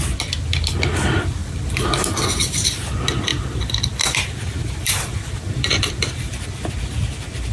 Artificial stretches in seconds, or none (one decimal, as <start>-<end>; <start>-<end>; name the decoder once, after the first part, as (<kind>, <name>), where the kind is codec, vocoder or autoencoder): 1.4-1.9 (vocoder, BigVGAN v2); 3.3-5.9